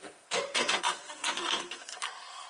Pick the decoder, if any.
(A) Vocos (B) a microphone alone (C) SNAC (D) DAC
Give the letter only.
C